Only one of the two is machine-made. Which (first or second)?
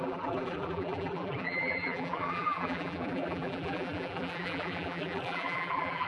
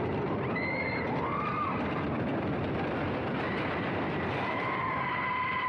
first